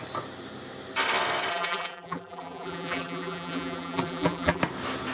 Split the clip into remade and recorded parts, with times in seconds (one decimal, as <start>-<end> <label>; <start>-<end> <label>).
0.0-1.5 recorded; 1.5-4.6 remade; 4.6-5.1 recorded